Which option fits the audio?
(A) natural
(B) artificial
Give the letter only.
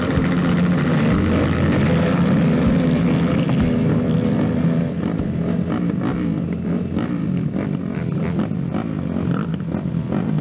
A